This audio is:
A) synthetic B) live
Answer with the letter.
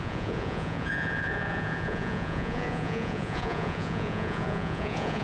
A